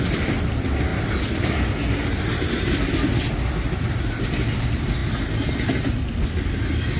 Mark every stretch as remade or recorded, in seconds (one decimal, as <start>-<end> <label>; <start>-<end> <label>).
0.0-7.0 recorded

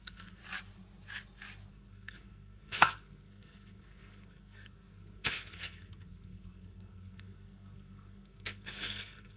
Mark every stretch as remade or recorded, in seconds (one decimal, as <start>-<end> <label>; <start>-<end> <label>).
0.0-0.4 remade; 0.4-1.7 recorded; 1.7-9.4 remade

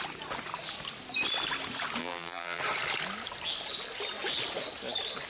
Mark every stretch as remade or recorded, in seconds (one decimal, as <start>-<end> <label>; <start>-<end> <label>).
0.0-2.0 recorded; 2.0-2.6 remade; 2.6-5.3 recorded

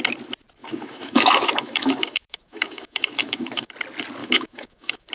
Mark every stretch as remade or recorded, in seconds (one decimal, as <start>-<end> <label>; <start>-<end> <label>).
0.0-0.6 recorded; 0.6-3.7 remade; 3.7-4.2 recorded; 4.2-5.1 remade